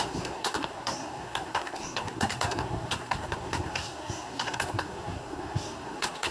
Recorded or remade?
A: remade